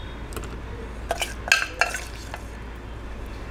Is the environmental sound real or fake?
real